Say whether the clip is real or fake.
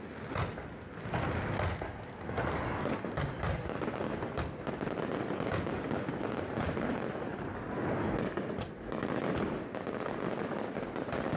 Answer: real